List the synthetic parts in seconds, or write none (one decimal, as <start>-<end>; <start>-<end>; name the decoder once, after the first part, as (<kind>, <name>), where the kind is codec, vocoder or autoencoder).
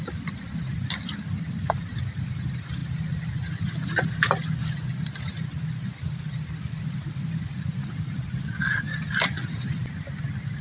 none